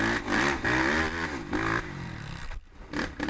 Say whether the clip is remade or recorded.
recorded